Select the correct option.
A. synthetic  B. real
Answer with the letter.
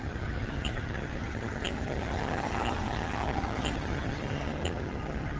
A